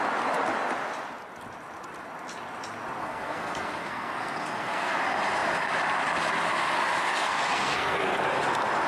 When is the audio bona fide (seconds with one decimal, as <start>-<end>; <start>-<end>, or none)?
0.0-3.0; 5.0-7.0; 8.2-8.9